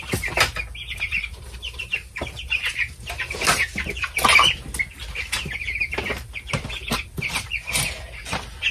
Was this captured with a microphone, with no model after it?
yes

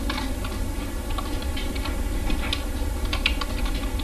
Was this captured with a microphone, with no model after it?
yes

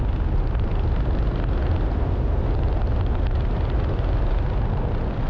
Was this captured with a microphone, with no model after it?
yes